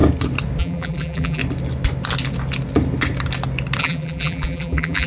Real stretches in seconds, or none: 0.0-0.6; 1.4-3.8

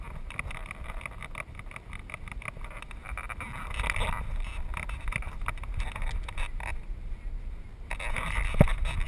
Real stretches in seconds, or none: 0.0-9.1